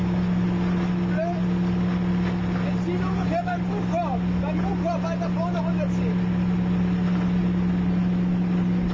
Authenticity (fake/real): real